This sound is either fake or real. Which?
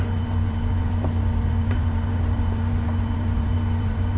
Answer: fake